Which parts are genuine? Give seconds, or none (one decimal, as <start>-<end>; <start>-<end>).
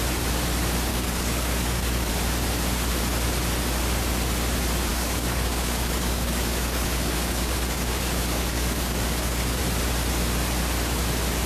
0.0-0.9; 2.1-4.9; 9.6-11.5